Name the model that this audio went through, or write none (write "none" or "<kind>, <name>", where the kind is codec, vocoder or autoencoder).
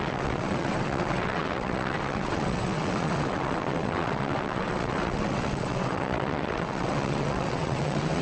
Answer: vocoder, WaveNeXt